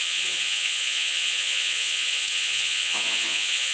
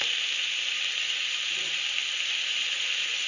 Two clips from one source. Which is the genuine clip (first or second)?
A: second